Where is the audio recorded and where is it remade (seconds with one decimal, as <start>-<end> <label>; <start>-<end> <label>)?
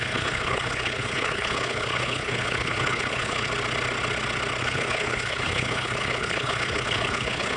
0.0-3.5 remade; 3.5-4.6 recorded; 4.6-7.6 remade